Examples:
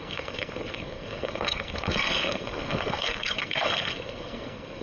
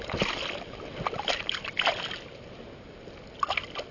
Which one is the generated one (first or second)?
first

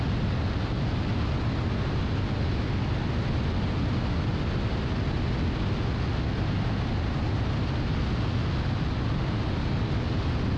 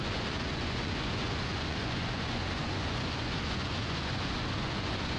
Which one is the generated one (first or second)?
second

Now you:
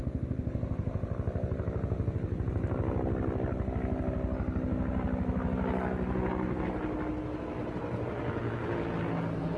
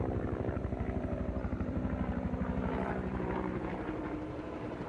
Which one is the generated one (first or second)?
second